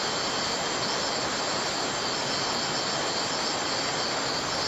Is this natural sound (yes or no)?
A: yes